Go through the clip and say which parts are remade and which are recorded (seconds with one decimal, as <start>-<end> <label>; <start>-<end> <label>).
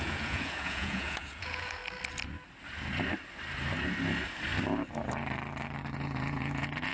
0.0-1.8 remade; 1.8-5.9 recorded; 5.9-6.9 remade